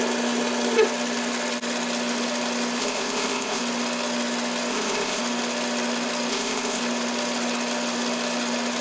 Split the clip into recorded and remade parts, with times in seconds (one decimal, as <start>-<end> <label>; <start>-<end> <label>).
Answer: 0.0-2.8 recorded; 2.8-3.6 remade; 3.6-4.7 recorded; 4.7-5.2 remade; 5.2-6.3 recorded; 6.3-6.8 remade; 6.8-8.8 recorded